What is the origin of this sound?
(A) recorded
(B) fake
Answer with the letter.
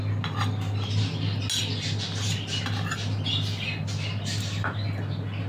A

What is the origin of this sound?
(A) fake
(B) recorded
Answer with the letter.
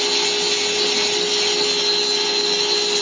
B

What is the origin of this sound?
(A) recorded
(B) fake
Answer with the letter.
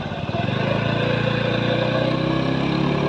A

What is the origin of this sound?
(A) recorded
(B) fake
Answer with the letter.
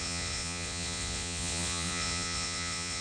B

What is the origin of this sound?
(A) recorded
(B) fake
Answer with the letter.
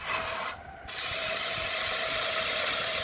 A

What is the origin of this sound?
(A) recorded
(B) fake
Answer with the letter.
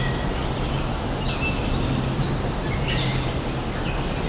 A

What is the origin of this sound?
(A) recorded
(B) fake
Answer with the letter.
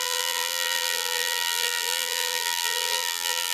B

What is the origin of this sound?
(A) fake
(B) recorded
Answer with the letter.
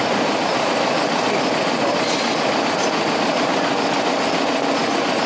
B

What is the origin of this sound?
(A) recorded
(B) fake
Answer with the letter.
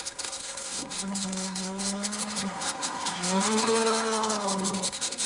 B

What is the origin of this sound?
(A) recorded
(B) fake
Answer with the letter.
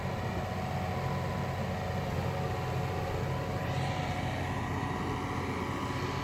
A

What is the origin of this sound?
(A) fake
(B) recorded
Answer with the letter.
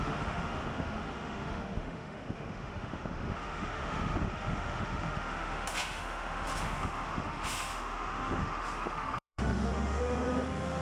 A